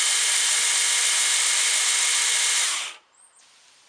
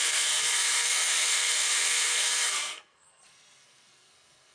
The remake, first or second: second